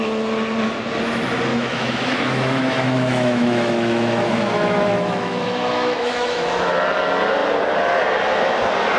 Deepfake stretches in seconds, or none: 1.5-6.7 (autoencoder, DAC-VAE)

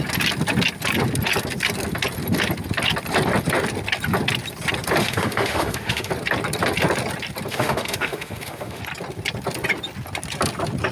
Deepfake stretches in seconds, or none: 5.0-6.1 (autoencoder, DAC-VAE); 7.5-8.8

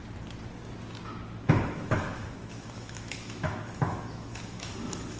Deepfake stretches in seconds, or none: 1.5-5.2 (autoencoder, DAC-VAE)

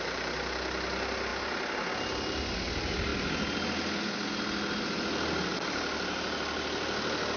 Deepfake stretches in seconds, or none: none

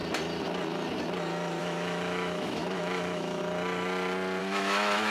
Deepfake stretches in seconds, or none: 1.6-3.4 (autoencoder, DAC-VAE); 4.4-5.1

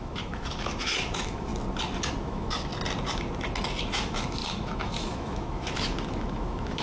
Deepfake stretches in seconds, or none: 0.0-1.5 (autoencoder, DAC-VAE); 2.2-2.7; 3.8-6.8

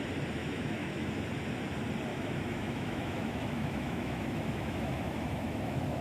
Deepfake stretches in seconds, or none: 0.4-1.2 (autoencoder, DAC-VAE); 2.1-6.0